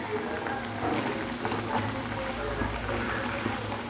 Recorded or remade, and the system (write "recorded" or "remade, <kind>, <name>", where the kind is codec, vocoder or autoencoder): remade, vocoder, BigVGAN v2